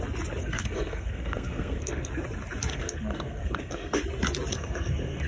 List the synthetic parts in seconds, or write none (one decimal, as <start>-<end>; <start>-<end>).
0.4-2.1; 2.7-4.0; 4.5-5.3